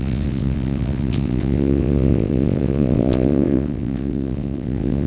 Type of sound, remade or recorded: remade